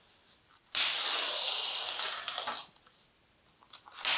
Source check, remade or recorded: recorded